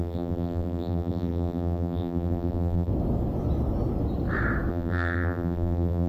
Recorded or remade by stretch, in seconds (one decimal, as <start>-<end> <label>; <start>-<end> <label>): 0.0-2.9 remade; 2.9-4.7 recorded; 4.7-6.1 remade